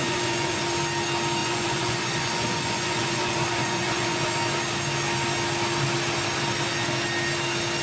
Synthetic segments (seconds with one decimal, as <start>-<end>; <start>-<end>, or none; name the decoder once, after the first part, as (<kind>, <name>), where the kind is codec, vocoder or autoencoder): 0.0-0.6 (vocoder, Vocos); 1.4-4.3